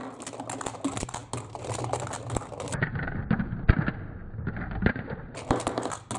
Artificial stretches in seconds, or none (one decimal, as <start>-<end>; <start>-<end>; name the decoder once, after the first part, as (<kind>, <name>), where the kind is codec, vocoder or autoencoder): none